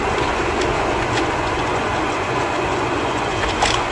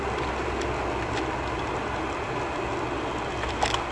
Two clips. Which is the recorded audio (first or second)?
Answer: second